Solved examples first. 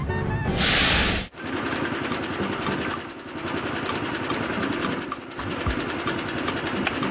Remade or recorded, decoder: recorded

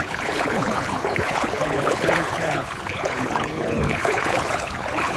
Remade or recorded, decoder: remade, codec, HILCodec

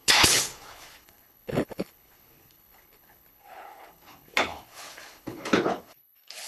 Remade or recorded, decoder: remade, codec, HILCodec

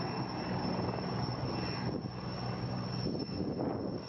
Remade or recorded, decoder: recorded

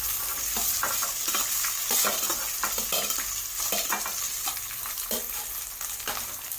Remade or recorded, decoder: recorded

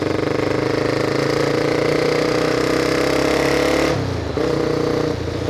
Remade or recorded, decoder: recorded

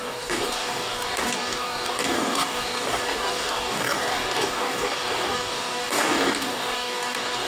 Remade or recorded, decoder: remade, codec, DAC